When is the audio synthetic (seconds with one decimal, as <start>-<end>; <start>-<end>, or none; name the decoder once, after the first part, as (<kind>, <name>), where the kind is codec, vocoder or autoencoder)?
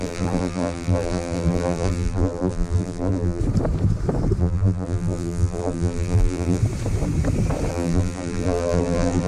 0.0-3.4 (vocoder, BigVGAN v2); 4.4-6.6; 7.7-9.3